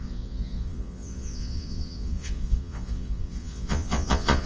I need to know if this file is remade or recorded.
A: remade